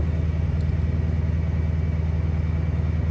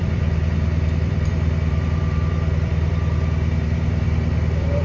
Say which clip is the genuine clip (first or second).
first